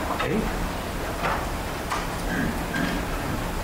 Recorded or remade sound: recorded